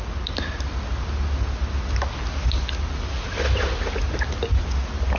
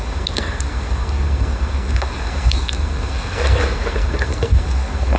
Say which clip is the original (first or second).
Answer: first